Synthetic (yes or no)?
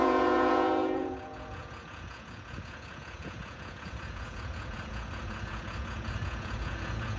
yes